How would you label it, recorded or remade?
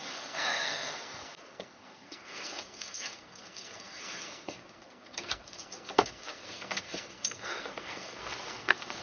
remade